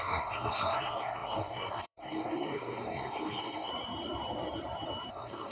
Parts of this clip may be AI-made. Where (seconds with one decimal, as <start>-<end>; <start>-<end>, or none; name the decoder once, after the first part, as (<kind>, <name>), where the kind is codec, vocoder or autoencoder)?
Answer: 0.0-3.7 (codec, SNAC); 5.1-5.5